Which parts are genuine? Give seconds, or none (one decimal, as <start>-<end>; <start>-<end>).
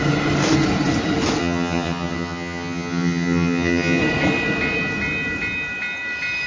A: 0.0-1.4; 4.0-6.5